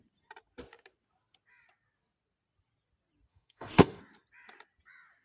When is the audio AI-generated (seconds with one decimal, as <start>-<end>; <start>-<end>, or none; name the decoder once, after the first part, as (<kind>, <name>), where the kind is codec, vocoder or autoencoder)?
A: 3.3-4.0 (codec, DAC)

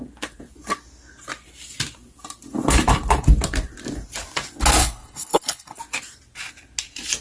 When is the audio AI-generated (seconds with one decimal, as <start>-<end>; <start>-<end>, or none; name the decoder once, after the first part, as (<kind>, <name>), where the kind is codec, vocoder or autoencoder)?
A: 4.8-5.8 (codec, HILCodec)

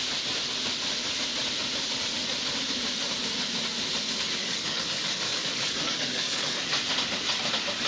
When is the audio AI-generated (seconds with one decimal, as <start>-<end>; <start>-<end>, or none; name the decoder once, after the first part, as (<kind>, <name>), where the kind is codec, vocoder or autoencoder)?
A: 4.4-6.7 (codec, DAC)

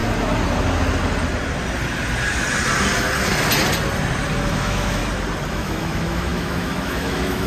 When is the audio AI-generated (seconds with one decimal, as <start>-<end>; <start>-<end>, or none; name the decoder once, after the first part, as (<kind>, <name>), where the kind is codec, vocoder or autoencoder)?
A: 4.5-5.0 (autoencoder, DAC-VAE); 5.5-7.5

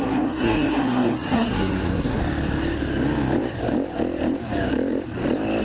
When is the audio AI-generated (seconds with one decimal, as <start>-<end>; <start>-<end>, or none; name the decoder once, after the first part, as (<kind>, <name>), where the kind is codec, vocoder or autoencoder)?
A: 0.0-2.2 (codec, SNAC)

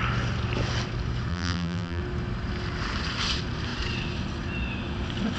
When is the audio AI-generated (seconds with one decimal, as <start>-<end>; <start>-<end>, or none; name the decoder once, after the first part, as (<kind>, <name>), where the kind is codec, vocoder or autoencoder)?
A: 1.3-2.0 (vocoder, BigVGAN v2)

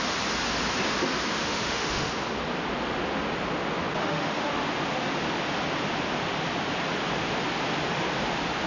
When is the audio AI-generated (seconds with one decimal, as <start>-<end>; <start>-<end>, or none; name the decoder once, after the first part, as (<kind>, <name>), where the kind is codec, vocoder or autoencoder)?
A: 1.4-2.1 (autoencoder, DAC-VAE); 4.0-4.5